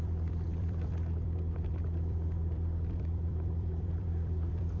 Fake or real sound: fake